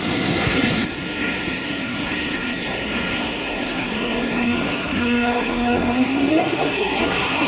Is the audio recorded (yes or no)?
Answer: no